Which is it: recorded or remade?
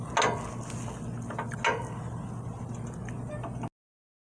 recorded